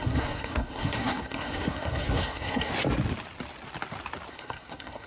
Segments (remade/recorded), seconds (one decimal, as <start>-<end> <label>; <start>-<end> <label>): 0.0-2.7 remade; 2.7-4.3 recorded; 4.3-5.1 remade